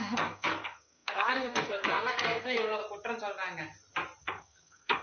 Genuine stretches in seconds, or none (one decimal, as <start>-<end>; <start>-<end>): 2.8-4.2